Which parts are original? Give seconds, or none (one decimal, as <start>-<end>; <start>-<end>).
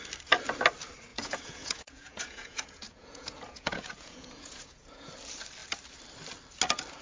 0.0-1.1; 5.1-7.0